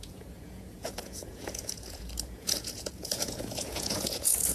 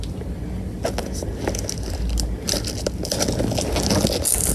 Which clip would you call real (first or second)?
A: second